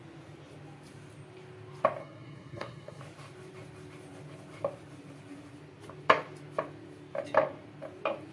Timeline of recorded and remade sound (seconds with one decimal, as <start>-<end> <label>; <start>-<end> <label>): 0.0-2.0 recorded; 2.0-3.0 remade; 3.0-8.3 recorded